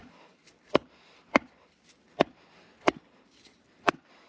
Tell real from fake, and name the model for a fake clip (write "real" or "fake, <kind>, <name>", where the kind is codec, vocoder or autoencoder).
fake, vocoder, BigVGAN v2